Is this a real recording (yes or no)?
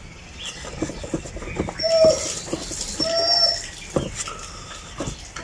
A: yes